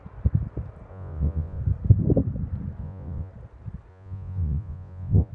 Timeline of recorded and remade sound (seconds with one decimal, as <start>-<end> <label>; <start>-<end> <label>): 0.0-0.9 recorded; 0.9-1.6 remade; 1.6-2.8 recorded; 2.8-3.3 remade; 3.3-3.9 recorded; 3.9-5.3 remade